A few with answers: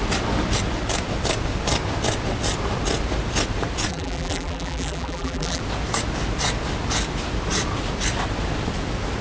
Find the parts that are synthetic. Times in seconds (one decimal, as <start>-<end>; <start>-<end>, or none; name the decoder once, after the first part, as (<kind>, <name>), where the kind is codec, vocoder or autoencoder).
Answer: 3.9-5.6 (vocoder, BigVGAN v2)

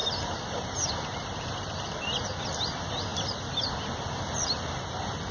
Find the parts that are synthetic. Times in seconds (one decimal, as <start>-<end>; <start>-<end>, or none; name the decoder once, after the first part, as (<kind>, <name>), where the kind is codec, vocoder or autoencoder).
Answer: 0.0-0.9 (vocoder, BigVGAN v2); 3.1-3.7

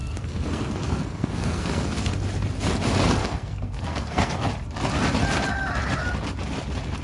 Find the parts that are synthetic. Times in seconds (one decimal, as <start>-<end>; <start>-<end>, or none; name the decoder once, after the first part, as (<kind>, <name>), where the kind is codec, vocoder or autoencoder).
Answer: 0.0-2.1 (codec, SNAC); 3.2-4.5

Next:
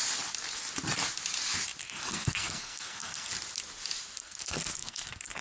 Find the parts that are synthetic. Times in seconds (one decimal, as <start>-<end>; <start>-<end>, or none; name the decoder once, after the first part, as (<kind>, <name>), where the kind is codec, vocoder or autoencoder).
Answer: 1.8-3.3 (codec, SNAC); 4.2-5.4

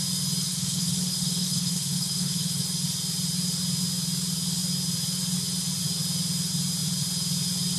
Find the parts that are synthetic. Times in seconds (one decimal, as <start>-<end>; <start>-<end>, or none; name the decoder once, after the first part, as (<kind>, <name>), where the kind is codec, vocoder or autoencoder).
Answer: 0.5-2.6 (codec, HILCodec)

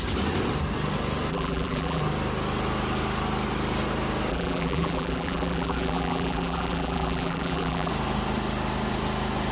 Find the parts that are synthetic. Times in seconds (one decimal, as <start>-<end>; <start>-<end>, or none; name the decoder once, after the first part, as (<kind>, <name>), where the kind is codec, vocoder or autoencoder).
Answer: 1.3-2.0 (vocoder, BigVGAN v2); 4.3-7.9

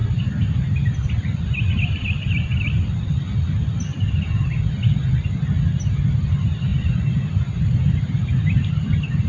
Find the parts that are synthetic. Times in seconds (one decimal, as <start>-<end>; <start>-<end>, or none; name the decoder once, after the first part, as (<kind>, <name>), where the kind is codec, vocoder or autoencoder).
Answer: 6.7-8.7 (vocoder, BigVGAN v2)